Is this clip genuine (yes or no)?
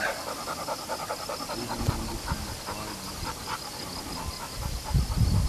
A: yes